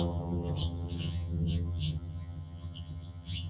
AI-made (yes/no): yes